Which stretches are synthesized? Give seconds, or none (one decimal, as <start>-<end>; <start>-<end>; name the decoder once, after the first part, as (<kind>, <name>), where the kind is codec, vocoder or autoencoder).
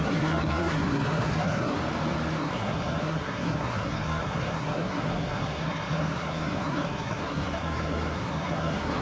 0.0-1.8 (codec, SNAC); 2.4-9.0